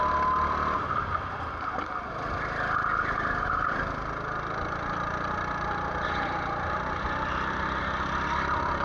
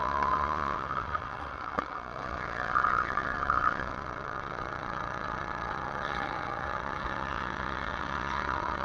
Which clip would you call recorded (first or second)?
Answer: first